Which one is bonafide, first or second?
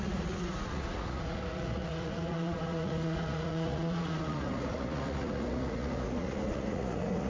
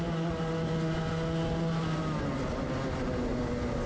second